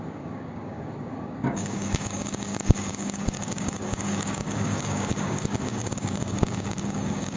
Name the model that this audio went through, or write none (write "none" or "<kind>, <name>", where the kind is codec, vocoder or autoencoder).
codec, DAC